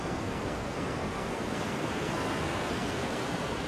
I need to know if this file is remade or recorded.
remade